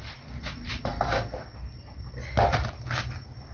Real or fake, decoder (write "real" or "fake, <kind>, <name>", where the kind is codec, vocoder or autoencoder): real